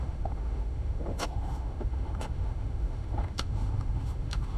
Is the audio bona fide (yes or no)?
no